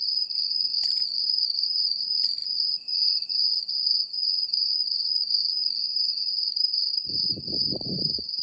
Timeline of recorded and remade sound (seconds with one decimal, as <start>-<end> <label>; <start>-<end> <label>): 0.0-2.4 remade; 2.4-4.5 recorded; 4.5-5.4 remade; 5.4-6.3 recorded; 6.3-8.4 remade